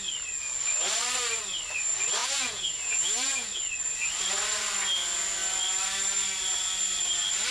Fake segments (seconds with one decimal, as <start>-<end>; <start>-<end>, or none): 2.2-3.6